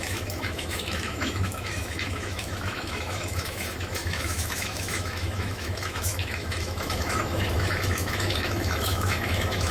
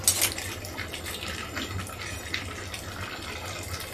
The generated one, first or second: first